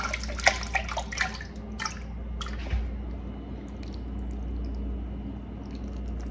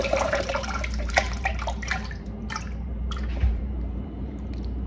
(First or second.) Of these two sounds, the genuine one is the first